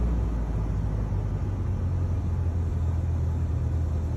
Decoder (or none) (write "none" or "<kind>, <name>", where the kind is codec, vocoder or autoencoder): none